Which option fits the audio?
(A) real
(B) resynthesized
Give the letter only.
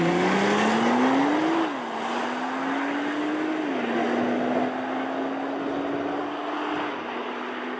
A